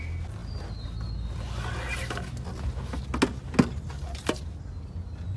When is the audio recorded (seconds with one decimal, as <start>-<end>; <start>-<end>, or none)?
0.0-5.4